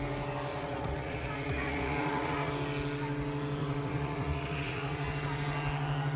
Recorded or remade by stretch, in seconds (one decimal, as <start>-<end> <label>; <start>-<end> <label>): 0.0-0.5 recorded; 0.5-2.5 remade; 2.5-3.6 recorded; 3.6-5.1 remade; 5.1-6.2 recorded